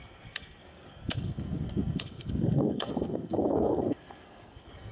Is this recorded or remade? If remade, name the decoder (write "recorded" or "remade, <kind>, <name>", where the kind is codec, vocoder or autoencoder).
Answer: remade, codec, SNAC